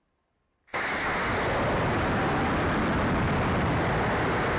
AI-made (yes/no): no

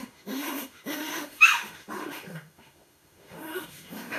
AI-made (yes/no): yes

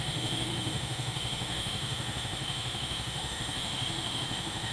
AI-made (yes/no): yes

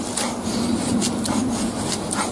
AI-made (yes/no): no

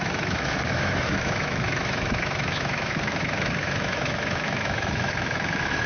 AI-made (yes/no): yes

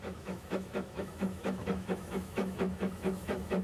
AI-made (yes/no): yes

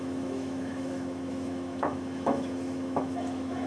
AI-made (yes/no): yes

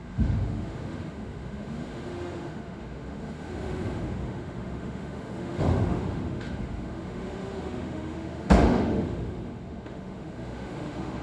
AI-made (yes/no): yes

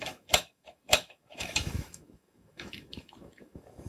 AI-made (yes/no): yes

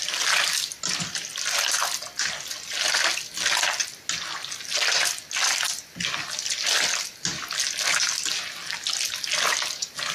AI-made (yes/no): no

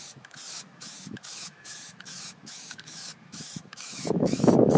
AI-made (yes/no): yes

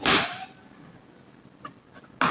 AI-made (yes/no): no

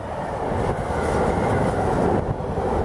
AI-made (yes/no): no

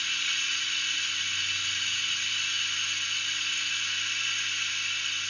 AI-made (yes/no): no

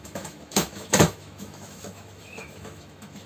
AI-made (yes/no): yes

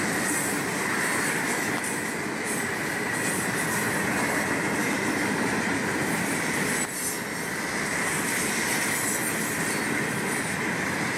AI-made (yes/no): no